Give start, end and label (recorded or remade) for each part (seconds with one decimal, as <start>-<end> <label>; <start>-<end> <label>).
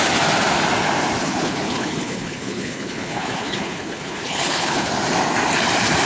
0.0-1.2 recorded; 1.2-4.9 remade; 4.9-6.1 recorded